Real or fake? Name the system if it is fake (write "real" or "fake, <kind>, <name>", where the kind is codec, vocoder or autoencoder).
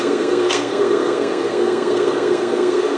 fake, codec, SNAC